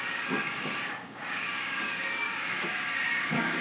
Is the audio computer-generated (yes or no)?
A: yes